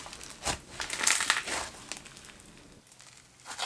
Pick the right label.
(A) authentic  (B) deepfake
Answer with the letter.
A